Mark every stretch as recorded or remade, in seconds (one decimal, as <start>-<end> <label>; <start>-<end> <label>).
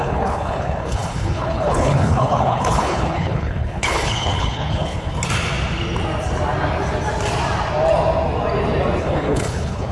0.0-5.1 remade; 5.1-9.0 recorded; 9.0-9.9 remade